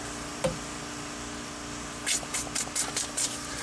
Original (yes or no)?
yes